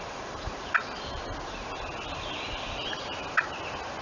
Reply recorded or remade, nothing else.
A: recorded